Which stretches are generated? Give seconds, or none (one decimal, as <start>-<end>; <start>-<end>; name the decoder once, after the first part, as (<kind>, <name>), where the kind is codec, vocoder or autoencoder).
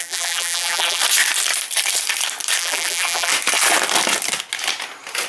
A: 0.0-1.0 (vocoder, BigVGAN v2); 2.6-3.3